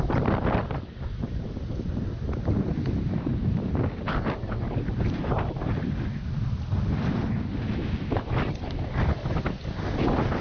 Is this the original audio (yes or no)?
yes